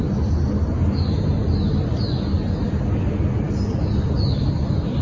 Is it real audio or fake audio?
real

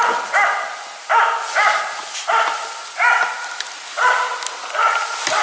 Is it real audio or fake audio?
real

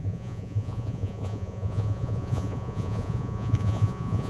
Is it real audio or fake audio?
fake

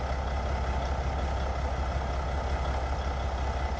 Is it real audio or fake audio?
real